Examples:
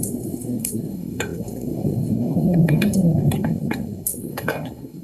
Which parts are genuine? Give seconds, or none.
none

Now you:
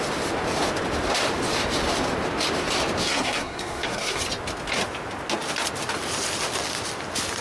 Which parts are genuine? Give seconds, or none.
0.0-3.0; 4.2-7.4

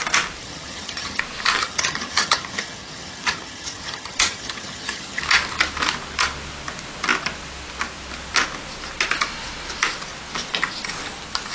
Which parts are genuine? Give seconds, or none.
0.0-0.4; 1.2-1.6; 5.2-11.5

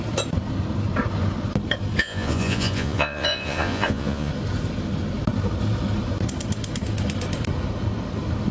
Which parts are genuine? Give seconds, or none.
0.0-2.0; 4.3-8.5

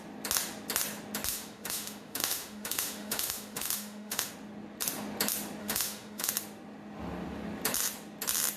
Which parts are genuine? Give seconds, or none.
0.0-1.3; 4.3-5.6; 6.3-8.6

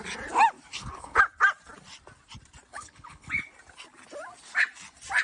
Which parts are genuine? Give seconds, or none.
0.0-0.7; 1.2-2.7; 3.3-5.2